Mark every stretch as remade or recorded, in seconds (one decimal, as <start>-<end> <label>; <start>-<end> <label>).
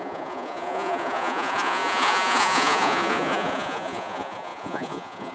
0.0-5.3 remade